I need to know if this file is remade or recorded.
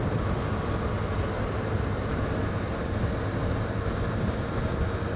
recorded